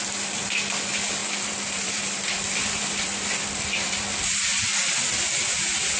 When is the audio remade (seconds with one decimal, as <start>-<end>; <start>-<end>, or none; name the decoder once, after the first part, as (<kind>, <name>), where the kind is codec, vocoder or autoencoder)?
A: 1.2-4.2 (vocoder, BigVGAN v2); 4.7-5.6